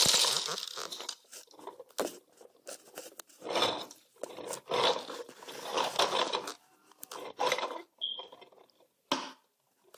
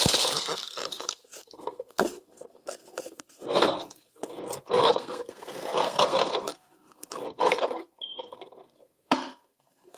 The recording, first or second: first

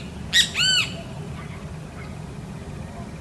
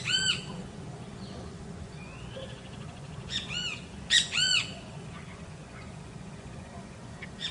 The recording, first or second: first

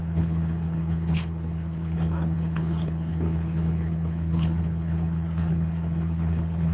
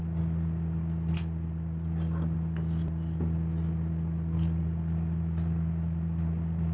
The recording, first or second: second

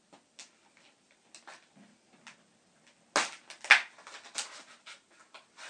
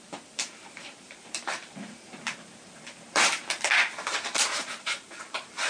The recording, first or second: first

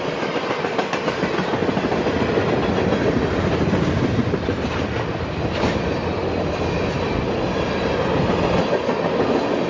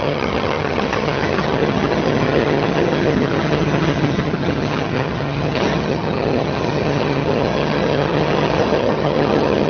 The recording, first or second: first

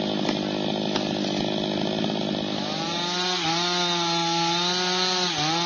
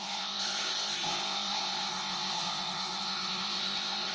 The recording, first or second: first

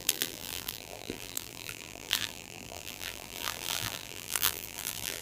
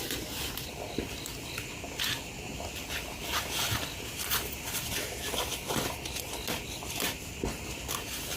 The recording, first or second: second